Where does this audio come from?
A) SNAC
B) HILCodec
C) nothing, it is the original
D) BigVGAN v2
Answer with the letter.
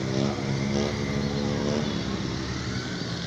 C